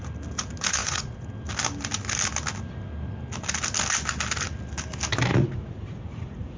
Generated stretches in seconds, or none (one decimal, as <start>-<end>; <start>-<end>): 0.8-1.3; 5.3-6.6